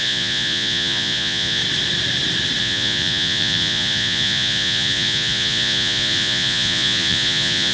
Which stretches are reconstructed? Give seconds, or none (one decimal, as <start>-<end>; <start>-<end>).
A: 0.0-1.6; 2.6-7.7